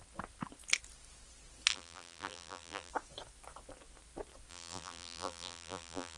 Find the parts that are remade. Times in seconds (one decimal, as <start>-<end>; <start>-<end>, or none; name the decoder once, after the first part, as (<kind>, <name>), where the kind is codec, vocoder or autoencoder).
1.7-2.9 (vocoder, BigVGAN v2); 4.5-6.2